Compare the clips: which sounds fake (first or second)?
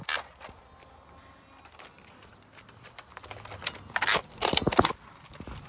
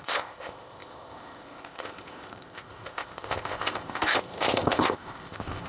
second